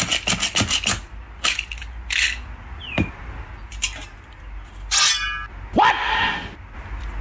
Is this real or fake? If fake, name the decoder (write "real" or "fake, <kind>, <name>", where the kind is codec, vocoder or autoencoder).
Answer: real